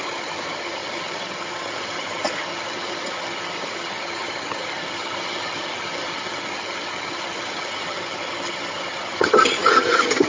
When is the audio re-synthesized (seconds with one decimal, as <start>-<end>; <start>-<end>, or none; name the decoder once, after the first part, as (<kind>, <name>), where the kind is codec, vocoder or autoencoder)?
0.0-10.3 (vocoder, HiFi-GAN)